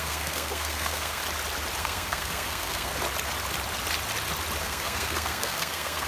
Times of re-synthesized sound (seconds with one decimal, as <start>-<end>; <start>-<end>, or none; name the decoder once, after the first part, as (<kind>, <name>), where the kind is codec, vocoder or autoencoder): 0.0-1.2 (codec, SNAC); 1.8-2.9; 4.6-6.1